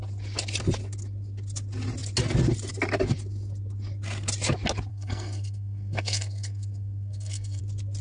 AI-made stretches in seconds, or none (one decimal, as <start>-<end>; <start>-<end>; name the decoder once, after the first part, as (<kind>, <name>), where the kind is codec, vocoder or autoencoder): 4.9-7.6 (codec, SNAC)